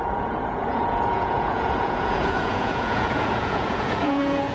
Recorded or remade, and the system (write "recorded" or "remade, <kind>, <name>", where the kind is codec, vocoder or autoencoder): remade, vocoder, Vocos